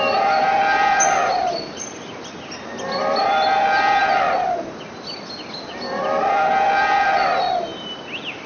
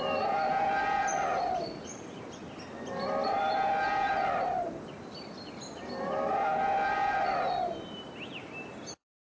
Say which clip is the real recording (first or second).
first